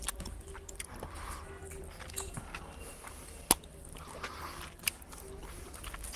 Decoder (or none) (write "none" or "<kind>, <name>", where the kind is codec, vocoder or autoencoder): none